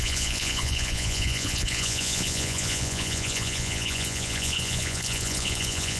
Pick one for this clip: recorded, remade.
remade